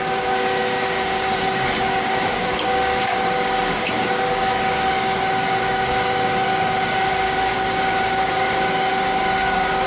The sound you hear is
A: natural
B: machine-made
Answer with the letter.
B